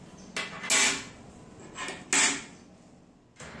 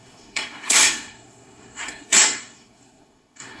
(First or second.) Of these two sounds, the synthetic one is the second